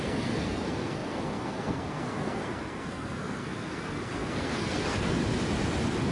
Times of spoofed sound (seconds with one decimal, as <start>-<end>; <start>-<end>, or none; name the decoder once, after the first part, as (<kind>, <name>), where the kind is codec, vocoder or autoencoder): 0.0-5.2 (codec, SNAC)